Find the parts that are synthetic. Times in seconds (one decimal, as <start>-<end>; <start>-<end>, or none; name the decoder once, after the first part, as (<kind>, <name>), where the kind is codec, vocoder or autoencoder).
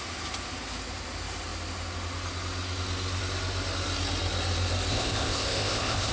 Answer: 4.9-6.1 (codec, ZipCodec)